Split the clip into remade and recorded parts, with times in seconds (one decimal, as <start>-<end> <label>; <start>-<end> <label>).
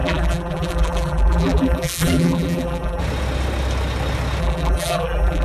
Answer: 0.0-3.0 remade; 3.0-4.4 recorded; 4.4-5.4 remade